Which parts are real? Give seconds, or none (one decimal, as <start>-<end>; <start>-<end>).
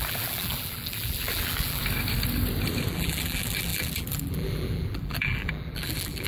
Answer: 1.8-2.9